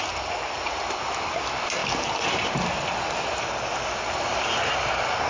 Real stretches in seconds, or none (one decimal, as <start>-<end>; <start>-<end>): 0.0-5.3